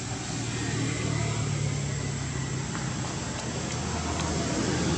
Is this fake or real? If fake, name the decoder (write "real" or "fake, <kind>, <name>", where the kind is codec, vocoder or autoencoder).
real